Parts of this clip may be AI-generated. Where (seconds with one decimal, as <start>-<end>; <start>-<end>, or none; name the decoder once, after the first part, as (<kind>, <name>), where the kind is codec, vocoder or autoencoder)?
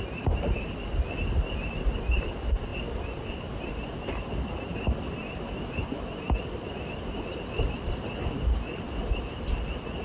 none